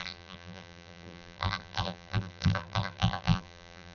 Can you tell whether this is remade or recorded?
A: remade